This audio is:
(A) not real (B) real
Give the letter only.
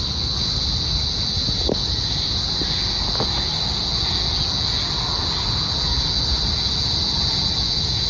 B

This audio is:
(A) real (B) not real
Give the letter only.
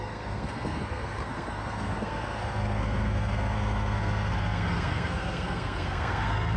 B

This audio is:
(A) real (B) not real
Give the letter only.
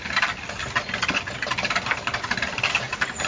A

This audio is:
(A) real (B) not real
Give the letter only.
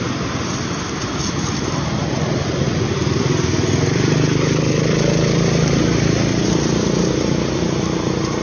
A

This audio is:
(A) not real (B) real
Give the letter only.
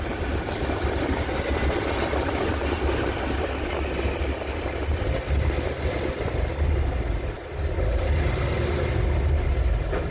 B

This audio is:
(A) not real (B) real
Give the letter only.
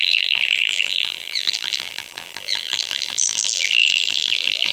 A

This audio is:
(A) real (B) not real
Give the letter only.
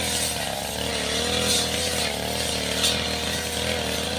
A